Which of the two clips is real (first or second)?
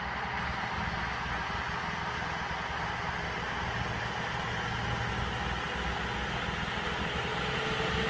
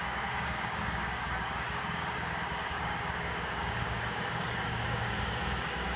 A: first